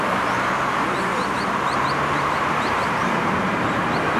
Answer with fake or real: fake